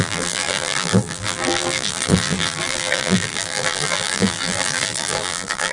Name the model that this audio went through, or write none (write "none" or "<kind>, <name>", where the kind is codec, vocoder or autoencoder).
vocoder, BigVGAN v2